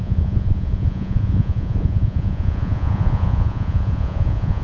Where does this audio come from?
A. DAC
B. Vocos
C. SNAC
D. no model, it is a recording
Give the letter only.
B